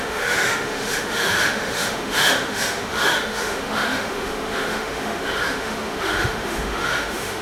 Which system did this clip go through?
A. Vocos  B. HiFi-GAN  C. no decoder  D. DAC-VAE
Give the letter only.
D